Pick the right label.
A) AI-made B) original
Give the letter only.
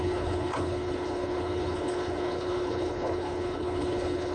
A